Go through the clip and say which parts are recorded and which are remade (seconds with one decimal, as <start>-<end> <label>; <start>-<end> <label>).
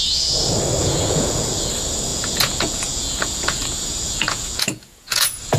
0.0-0.8 recorded; 0.8-1.7 remade; 1.7-2.1 recorded; 2.1-5.6 remade